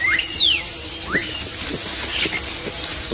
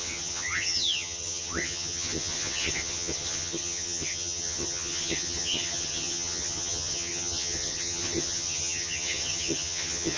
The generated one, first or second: second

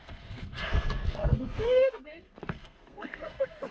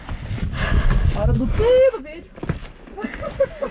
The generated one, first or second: first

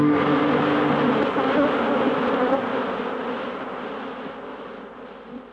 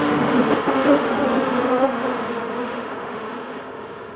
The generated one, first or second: second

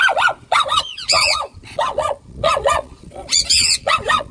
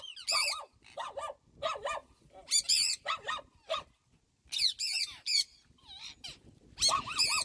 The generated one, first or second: first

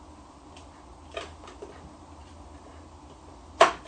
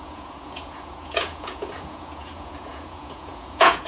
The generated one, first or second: second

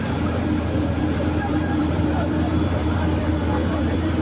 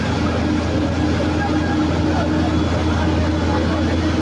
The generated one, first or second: first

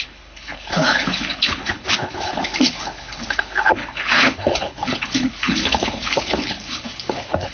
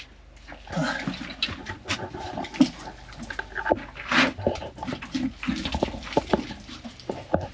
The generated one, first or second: first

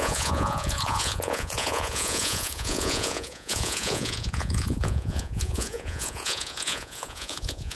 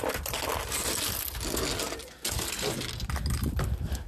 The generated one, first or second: first